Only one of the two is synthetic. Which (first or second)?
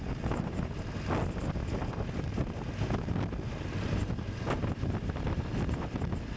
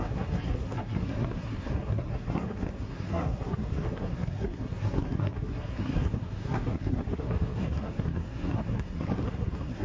second